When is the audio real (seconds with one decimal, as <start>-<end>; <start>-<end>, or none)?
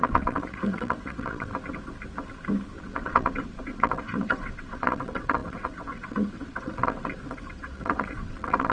1.5-2.8